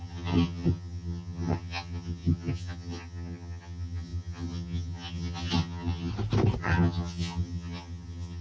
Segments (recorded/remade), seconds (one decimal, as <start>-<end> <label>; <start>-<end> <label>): 0.0-6.1 remade; 6.1-6.6 recorded; 6.6-8.4 remade